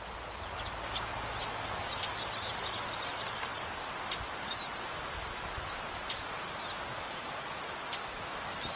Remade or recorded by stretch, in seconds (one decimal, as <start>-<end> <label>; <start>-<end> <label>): 0.0-8.8 recorded